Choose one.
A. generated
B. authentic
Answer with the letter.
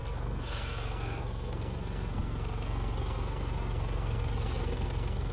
A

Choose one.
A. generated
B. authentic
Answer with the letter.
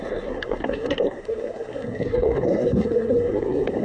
A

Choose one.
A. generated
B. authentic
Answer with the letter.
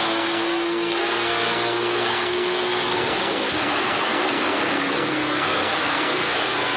A